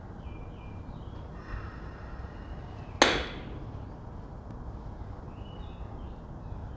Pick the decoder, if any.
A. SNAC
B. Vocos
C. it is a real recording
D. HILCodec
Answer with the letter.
C